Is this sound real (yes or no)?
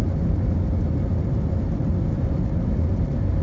no